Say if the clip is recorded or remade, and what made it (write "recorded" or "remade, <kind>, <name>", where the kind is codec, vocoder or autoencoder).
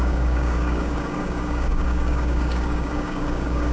remade, codec, DAC